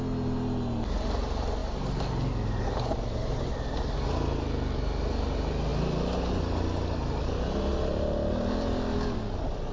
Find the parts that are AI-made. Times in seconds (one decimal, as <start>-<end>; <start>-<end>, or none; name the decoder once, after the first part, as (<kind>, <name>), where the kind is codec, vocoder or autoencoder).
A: none